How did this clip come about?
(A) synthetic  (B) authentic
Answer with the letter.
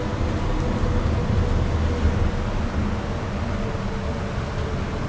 B